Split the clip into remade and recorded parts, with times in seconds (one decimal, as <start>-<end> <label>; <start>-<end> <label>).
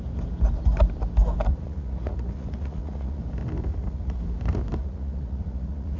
0.0-1.5 recorded; 1.5-3.2 remade; 3.2-3.7 recorded; 3.7-4.2 remade; 4.2-4.8 recorded; 4.8-6.0 remade